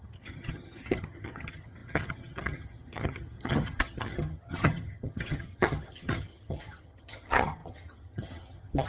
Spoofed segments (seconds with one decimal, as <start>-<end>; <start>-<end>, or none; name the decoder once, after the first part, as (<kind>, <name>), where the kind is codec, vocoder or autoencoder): 0.0-8.9 (vocoder, HiFi-GAN)